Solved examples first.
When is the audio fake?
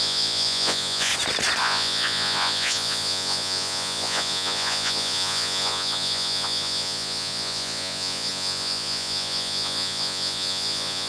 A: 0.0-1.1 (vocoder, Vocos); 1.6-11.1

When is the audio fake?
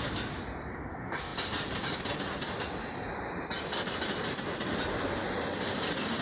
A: none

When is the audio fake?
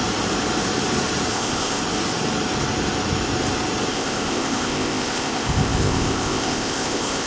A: 1.3-1.8 (codec, ZipCodec); 3.9-7.3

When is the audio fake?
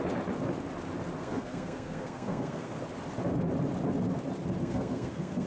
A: 1.2-2.8 (codec, SNAC); 4.6-5.5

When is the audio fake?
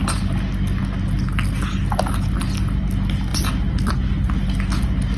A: none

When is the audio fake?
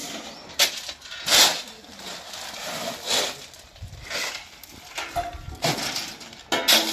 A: 0.0-0.5 (vocoder, BigVGAN v2)